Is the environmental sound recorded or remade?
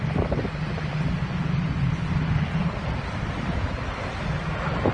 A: recorded